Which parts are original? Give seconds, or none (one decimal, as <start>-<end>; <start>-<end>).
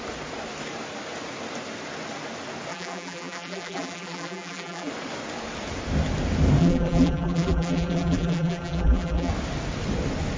0.0-2.7; 4.9-6.6; 9.3-10.4